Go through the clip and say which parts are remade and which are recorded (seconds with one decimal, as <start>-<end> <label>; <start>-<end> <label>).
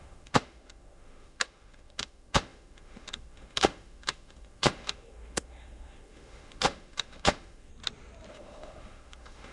0.0-7.7 remade; 7.7-8.3 recorded; 8.3-9.5 remade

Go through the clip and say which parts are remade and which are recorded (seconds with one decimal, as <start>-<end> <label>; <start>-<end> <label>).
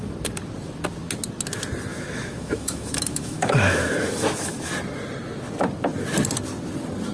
0.0-1.9 recorded; 1.9-4.7 remade; 4.7-7.1 recorded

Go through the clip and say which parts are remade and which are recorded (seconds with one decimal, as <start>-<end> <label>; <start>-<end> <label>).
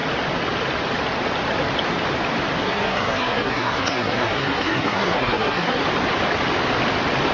0.0-2.6 recorded; 2.6-5.8 remade; 5.8-7.3 recorded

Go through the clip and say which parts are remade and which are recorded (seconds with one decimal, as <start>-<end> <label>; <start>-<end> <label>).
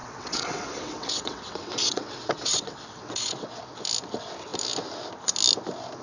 0.0-3.6 remade; 3.6-6.0 recorded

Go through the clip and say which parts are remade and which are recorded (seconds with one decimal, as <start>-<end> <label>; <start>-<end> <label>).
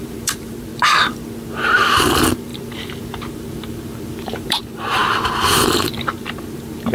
0.0-0.7 remade; 0.7-1.6 recorded; 1.6-6.9 remade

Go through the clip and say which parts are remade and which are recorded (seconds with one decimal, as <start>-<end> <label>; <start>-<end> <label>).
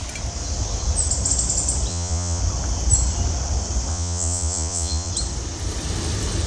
0.0-1.9 recorded; 1.9-2.4 remade; 2.4-3.9 recorded; 3.9-5.1 remade; 5.1-6.5 recorded